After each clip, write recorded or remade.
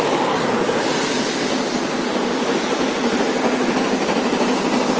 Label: recorded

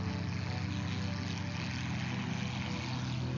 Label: recorded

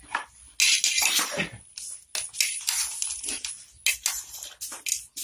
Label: recorded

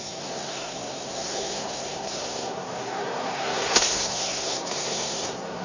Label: remade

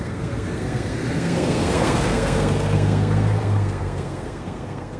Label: remade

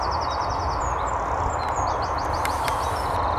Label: recorded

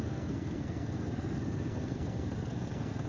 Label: remade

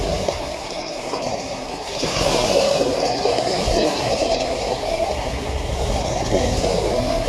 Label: remade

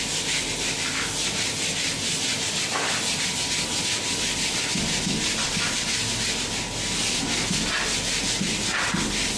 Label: recorded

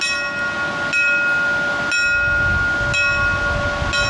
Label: recorded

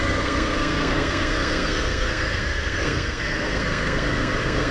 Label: remade